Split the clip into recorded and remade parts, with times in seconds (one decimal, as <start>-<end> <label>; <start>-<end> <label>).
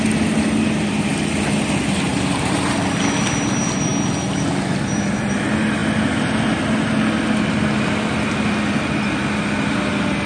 0.0-2.1 recorded; 2.1-3.0 remade; 3.0-10.3 recorded